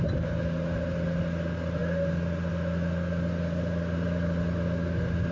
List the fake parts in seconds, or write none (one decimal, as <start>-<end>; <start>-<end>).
none